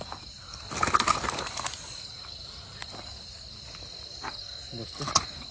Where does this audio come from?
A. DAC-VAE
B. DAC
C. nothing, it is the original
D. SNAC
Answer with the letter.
C